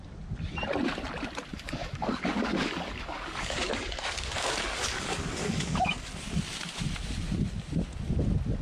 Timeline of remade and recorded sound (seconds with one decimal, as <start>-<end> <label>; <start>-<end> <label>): 0.0-1.5 recorded; 1.5-6.1 remade; 6.1-8.6 recorded